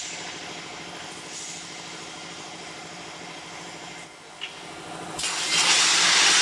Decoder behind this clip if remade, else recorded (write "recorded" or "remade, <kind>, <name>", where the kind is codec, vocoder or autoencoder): recorded